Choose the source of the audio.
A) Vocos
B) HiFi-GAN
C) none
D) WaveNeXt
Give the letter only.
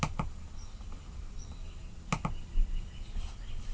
C